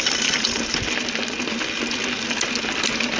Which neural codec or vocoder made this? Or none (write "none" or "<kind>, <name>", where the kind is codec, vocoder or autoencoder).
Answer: none